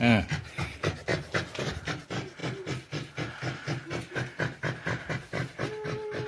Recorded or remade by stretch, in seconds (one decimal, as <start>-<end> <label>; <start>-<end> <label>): 0.0-2.4 remade; 2.4-5.1 recorded; 5.1-6.3 remade